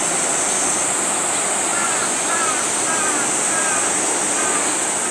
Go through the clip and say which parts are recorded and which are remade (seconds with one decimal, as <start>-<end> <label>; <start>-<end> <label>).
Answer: 0.0-1.7 recorded; 1.7-2.6 remade; 2.6-5.1 recorded